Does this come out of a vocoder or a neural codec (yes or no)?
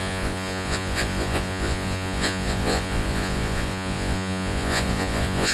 yes